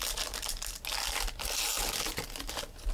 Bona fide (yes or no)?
yes